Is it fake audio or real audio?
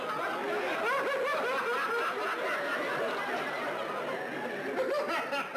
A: real